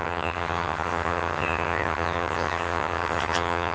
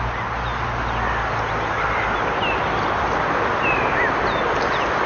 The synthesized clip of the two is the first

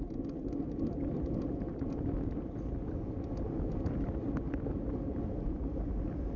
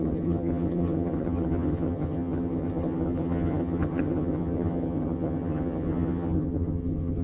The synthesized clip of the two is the second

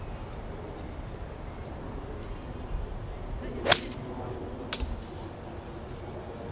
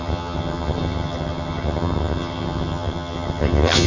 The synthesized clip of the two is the second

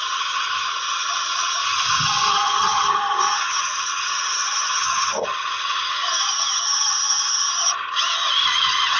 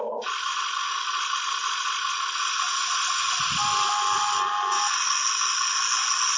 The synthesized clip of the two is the first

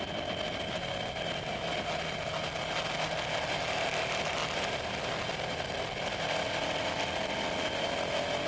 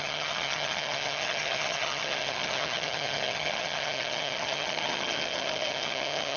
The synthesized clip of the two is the second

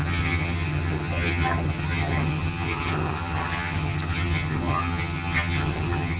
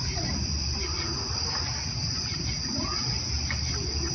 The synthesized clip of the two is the first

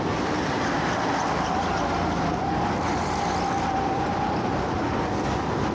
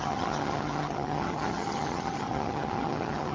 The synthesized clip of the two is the second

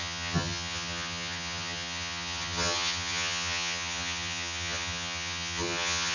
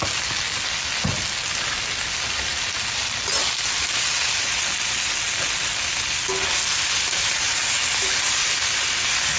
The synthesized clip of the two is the first